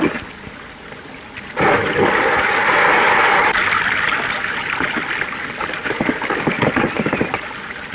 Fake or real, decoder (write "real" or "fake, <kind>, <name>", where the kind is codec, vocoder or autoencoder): real